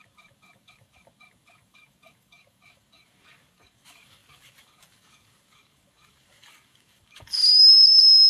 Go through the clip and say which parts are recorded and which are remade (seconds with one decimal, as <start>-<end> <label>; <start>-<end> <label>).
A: 0.0-8.3 remade